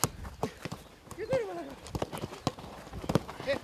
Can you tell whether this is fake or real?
real